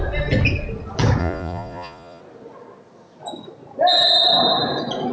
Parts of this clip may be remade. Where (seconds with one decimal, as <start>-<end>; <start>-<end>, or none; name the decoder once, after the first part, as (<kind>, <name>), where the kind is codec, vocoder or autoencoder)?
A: 1.2-2.2 (vocoder, Vocos)